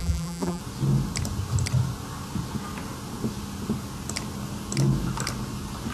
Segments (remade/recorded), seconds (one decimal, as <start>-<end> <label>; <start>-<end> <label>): 0.0-0.6 remade; 0.6-5.9 recorded